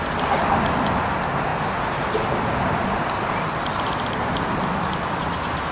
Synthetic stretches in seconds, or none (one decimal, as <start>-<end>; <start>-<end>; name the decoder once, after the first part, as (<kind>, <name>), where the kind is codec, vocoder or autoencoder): none